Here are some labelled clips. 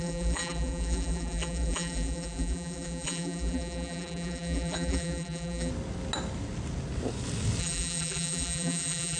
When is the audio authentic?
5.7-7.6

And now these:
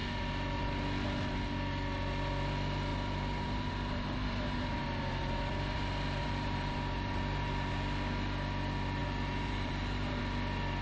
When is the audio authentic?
0.0-2.9; 7.7-9.0; 10.2-10.8

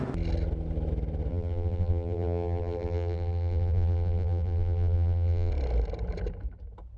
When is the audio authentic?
0.0-1.3; 5.5-7.0